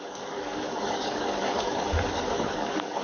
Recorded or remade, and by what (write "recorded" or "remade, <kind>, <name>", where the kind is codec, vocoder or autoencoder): remade, codec, DAC